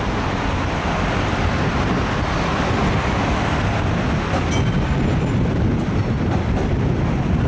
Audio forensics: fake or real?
real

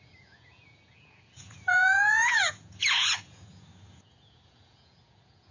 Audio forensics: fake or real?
fake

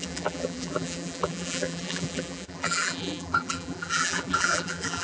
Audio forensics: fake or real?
fake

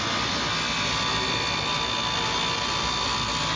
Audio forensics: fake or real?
real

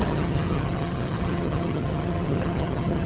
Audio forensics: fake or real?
fake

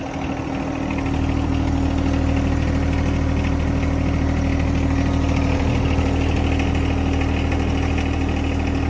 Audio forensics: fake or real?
real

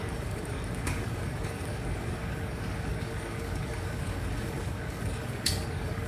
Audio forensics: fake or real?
fake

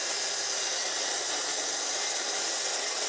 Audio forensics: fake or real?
real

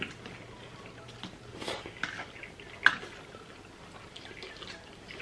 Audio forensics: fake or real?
real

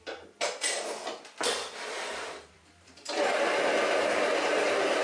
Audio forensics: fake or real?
real